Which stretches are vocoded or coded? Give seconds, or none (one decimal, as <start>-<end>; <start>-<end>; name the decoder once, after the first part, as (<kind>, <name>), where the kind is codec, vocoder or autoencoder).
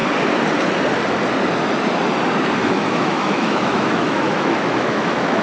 2.6-5.4 (autoencoder, DAC-VAE)